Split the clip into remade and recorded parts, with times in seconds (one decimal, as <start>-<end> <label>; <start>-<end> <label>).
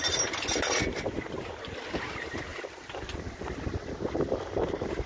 0.0-5.1 recorded